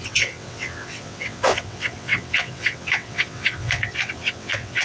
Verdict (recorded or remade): remade